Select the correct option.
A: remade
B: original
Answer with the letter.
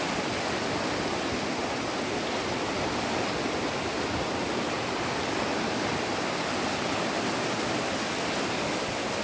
B